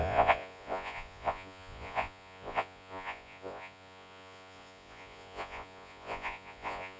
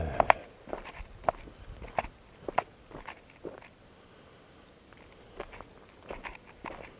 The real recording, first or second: second